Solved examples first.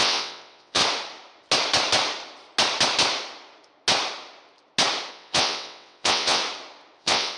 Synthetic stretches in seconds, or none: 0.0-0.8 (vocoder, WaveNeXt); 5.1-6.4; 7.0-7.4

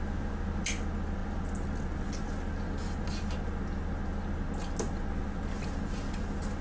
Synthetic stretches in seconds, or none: none

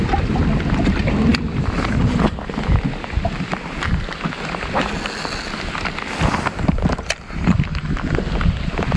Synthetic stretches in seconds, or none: none

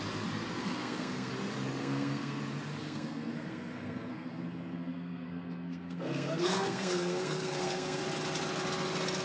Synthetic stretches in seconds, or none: 0.6-1.3 (codec, SNAC); 1.8-2.4; 2.8-8.0

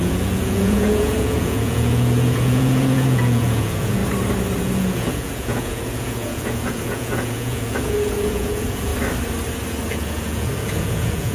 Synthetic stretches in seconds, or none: 0.0-4.0 (vocoder, Vocos); 4.6-8.9; 9.9-11.3

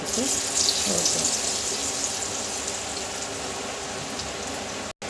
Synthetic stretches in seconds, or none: none